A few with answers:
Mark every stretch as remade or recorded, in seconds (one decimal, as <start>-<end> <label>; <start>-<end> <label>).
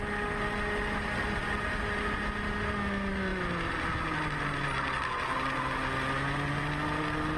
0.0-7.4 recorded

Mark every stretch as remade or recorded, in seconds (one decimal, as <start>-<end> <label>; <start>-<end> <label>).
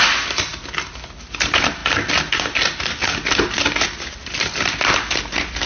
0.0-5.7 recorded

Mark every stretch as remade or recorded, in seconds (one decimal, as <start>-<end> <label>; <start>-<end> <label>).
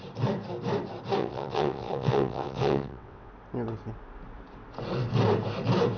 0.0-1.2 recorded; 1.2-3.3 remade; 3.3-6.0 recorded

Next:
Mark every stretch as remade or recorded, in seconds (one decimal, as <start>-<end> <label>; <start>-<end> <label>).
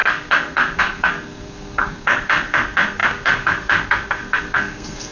0.0-5.1 remade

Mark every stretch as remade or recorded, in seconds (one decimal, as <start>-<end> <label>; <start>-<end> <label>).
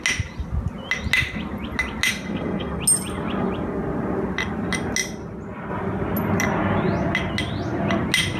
0.0-2.1 recorded; 2.1-2.8 remade; 2.8-8.4 recorded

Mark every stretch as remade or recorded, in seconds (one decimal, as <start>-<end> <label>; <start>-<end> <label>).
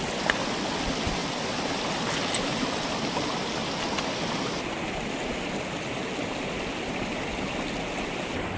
0.0-8.6 recorded